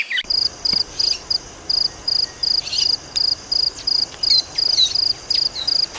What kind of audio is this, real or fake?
real